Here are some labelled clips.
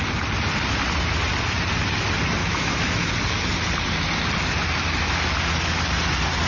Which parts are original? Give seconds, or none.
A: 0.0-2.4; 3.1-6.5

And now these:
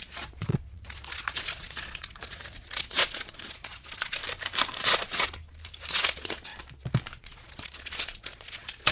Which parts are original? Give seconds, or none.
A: 4.2-4.8; 5.3-5.9; 6.5-7.2

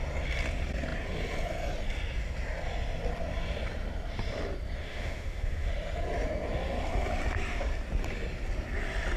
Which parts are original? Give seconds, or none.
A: 0.0-4.8; 5.7-9.2